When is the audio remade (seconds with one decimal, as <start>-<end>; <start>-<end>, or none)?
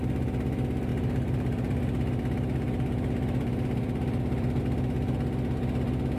0.9-4.6